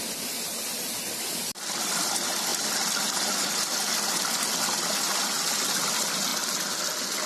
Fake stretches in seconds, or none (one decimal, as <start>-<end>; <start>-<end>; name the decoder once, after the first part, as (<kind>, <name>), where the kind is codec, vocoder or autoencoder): none

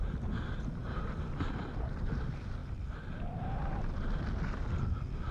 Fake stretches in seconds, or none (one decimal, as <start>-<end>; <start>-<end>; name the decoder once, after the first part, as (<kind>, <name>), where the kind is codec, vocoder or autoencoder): 0.8-1.3 (vocoder, BigVGAN v2)

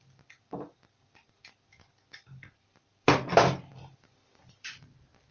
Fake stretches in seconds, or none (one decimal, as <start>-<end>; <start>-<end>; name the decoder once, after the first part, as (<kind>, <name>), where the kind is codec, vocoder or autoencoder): 0.0-5.3 (vocoder, BigVGAN v2)

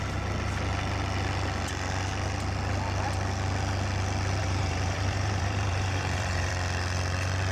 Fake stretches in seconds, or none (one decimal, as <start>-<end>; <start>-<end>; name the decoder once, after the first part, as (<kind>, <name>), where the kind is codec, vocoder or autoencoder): 4.4-6.5 (vocoder, BigVGAN v2)